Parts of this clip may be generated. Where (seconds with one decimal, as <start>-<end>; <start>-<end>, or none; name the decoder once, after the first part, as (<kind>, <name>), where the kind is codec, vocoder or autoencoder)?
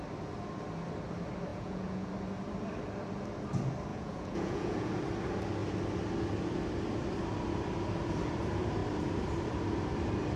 1.5-2.1 (vocoder, Vocos); 3.9-4.9